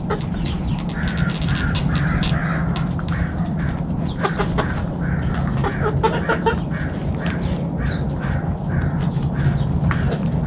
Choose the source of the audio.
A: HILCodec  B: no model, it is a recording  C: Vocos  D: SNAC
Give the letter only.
B